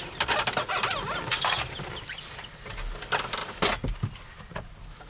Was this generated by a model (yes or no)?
no